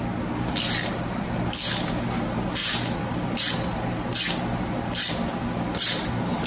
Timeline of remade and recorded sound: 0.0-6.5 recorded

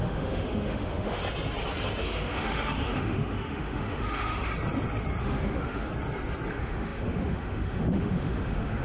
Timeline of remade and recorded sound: 0.0-1.2 remade; 1.2-2.0 recorded; 2.0-4.5 remade; 4.5-5.2 recorded; 5.2-5.9 remade; 5.9-6.5 recorded; 6.5-8.8 remade

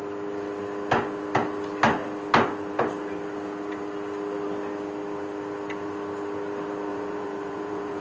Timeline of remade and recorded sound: 0.0-6.9 recorded; 6.9-8.0 remade

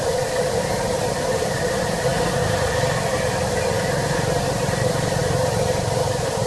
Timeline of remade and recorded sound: 0.0-2.4 remade; 2.4-4.4 recorded; 4.4-5.2 remade; 5.2-5.8 recorded; 5.8-6.5 remade